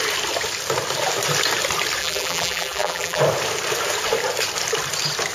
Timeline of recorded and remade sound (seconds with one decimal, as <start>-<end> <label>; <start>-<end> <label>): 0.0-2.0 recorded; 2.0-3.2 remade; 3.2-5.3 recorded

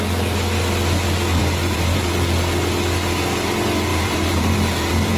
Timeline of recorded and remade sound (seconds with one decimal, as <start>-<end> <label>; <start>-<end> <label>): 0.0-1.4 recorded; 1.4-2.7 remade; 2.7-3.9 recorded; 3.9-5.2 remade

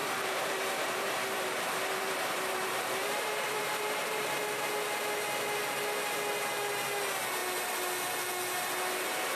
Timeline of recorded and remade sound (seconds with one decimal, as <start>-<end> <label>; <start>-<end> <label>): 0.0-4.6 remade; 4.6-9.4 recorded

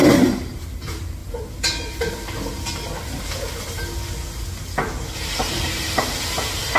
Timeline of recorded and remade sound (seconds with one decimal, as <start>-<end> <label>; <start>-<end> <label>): 0.0-1.2 remade; 1.2-5.3 recorded; 5.3-6.8 remade

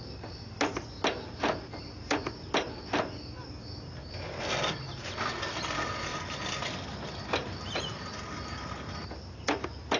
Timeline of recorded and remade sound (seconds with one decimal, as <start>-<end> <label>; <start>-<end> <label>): 0.0-10.0 recorded

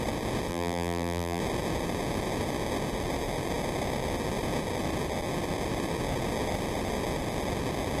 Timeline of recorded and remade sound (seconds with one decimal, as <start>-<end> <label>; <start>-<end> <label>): 0.0-0.5 recorded; 0.5-1.4 remade; 1.4-8.0 recorded